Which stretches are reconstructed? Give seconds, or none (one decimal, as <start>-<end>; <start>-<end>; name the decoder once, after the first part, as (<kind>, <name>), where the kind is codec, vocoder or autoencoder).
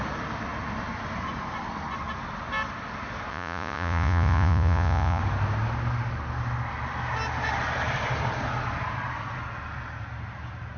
3.3-5.2 (vocoder, Vocos)